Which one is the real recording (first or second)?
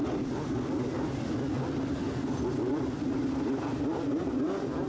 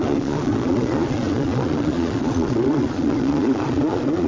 first